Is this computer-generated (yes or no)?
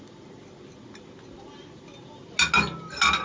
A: no